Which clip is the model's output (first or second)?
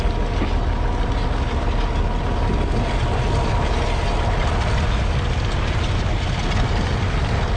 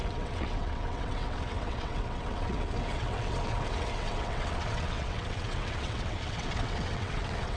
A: second